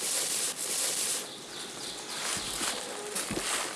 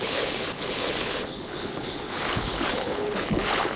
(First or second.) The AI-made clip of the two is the second